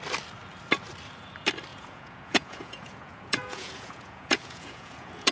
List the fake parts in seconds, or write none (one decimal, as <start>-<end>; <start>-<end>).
1.7-5.3

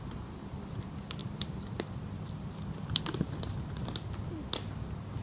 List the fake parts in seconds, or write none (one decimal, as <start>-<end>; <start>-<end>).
none

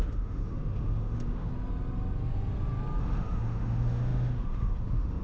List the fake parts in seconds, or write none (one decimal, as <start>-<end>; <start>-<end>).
0.0-1.5; 3.0-5.2

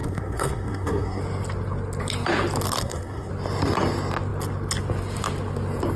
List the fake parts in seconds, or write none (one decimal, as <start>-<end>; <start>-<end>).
0.0-1.2; 2.8-3.3

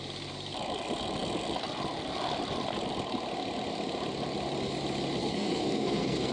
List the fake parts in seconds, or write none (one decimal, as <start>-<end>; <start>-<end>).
5.2-6.3

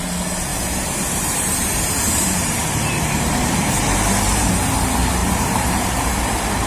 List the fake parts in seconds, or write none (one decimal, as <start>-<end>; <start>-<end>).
0.5-4.5; 5.2-6.1